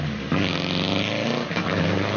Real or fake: real